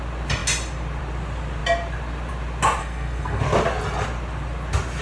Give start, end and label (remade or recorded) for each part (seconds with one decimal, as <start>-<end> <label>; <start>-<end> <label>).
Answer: 0.0-2.8 recorded; 2.8-3.4 remade; 3.4-5.0 recorded